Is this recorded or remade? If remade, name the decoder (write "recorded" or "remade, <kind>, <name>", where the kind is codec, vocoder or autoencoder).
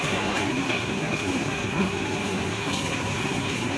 remade, codec, SNAC